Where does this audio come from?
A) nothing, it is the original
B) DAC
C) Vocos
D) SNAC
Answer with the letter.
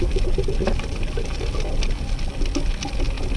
A